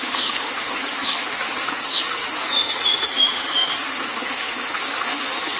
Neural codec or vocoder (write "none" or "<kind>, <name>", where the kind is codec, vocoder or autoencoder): autoencoder, DAC-VAE